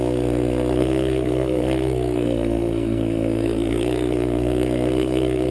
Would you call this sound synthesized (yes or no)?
yes